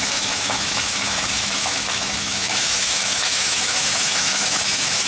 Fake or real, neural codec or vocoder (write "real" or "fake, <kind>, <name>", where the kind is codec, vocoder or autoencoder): fake, autoencoder, DAC-VAE